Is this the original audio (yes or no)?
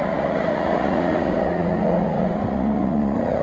no